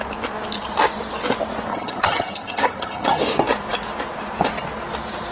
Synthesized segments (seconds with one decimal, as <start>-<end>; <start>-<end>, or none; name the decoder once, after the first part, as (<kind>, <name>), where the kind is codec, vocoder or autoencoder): 1.7-3.2 (vocoder, HiFi-GAN)

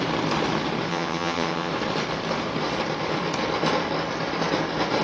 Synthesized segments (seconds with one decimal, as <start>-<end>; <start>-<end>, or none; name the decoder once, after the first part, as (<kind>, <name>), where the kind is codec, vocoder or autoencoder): 0.9-1.7 (vocoder, HiFi-GAN)

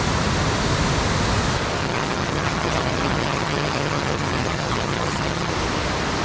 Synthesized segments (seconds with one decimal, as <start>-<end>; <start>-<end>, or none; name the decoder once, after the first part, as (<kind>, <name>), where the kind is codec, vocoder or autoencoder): 1.8-5.5 (vocoder, HiFi-GAN)

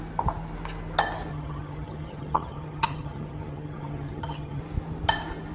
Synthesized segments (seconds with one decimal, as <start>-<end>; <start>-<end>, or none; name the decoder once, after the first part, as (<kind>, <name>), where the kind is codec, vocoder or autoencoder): 1.3-4.6 (vocoder, HiFi-GAN)

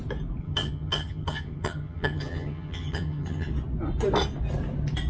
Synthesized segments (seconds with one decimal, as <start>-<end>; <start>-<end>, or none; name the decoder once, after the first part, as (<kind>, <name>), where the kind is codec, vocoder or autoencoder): 0.4-3.5 (vocoder, HiFi-GAN)

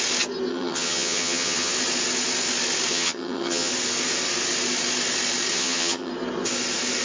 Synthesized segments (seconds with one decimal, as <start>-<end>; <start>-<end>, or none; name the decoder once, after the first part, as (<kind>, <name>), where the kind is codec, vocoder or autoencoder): 0.5-1.7 (vocoder, HiFi-GAN); 2.9-3.7; 5.5-6.1

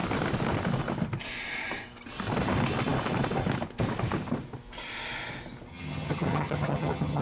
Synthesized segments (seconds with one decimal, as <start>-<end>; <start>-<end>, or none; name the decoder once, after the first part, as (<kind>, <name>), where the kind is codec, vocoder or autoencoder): 5.7-7.2 (vocoder, HiFi-GAN)